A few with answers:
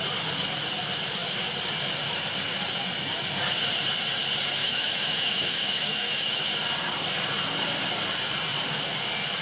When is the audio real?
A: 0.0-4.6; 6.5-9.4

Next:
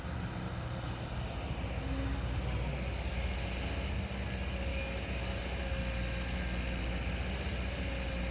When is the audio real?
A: 0.0-4.7; 5.4-8.3

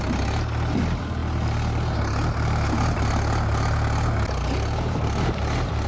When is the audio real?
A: 0.0-5.9